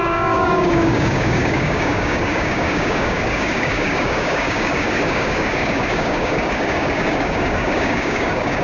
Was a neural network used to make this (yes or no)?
yes